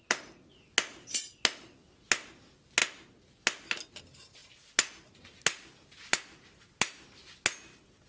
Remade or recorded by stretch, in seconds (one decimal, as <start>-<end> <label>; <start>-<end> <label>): 0.0-8.1 recorded